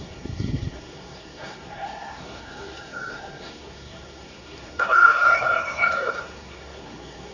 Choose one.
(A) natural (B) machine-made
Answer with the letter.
B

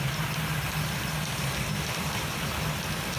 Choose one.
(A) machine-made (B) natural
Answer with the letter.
B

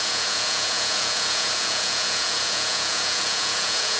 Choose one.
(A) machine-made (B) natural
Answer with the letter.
A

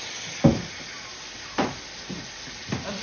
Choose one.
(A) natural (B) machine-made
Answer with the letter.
A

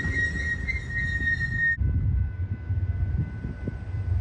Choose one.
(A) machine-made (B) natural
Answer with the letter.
B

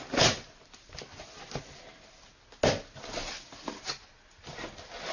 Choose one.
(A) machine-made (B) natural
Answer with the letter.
B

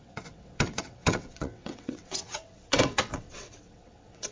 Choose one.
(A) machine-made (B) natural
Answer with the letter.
A